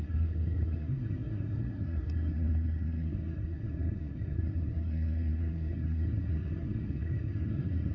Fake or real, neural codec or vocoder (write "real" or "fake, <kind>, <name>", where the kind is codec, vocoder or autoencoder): fake, codec, SNAC